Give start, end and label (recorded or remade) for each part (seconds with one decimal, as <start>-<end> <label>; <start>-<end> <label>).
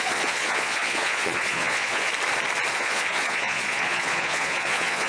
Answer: 0.0-2.1 remade; 2.1-2.7 recorded; 2.7-5.1 remade